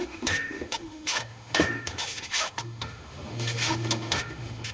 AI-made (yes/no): yes